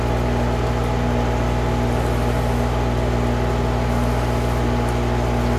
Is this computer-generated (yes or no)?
no